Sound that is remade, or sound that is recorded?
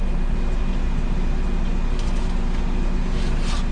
recorded